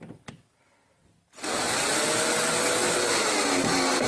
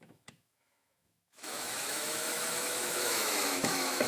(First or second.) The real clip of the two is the first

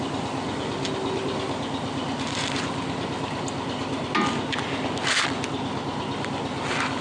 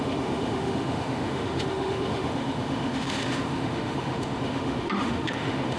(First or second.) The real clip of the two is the first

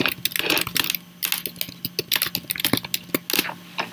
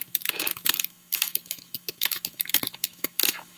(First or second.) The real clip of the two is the first